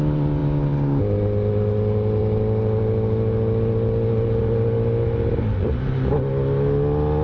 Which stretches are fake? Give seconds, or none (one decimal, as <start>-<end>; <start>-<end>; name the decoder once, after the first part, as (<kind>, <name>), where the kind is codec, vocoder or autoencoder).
none